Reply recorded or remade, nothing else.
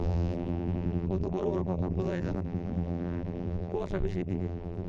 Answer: remade